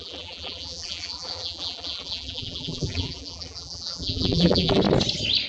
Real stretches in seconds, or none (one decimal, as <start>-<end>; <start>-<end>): 4.8-5.5